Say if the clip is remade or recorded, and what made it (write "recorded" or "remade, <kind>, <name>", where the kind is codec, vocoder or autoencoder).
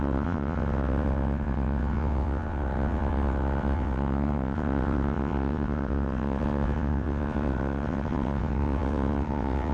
remade, vocoder, WaveNeXt